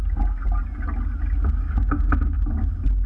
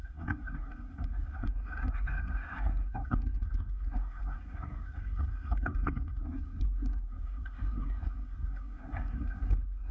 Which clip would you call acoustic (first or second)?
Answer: first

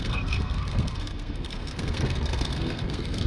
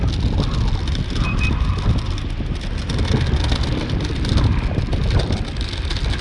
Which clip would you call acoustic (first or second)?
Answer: second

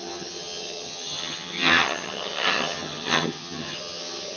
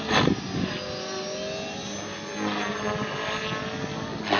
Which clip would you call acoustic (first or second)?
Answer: second